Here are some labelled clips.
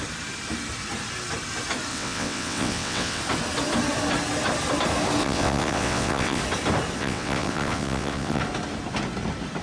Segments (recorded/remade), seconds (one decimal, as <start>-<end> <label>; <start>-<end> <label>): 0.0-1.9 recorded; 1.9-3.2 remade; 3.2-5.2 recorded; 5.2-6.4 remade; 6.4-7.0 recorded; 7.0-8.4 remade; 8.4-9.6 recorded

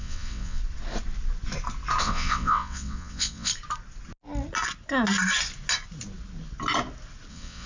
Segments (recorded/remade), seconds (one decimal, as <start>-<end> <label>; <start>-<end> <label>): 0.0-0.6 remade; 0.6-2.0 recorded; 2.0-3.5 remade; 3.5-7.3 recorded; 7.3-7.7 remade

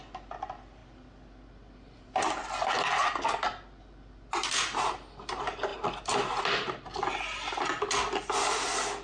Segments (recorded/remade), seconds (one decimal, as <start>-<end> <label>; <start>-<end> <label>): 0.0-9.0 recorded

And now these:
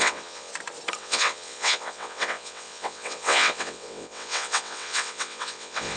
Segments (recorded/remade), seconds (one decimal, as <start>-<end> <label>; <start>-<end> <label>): 0.0-0.5 remade; 0.5-1.0 recorded; 1.0-6.0 remade

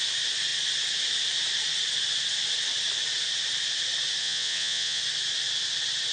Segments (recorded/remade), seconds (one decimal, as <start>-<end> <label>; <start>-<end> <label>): 0.0-4.2 recorded; 4.2-5.0 remade; 5.0-6.1 recorded